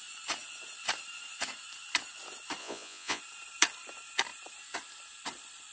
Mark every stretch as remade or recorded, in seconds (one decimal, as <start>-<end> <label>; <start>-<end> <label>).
0.0-2.6 recorded; 2.6-3.2 remade; 3.2-5.7 recorded